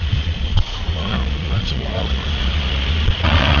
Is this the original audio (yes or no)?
no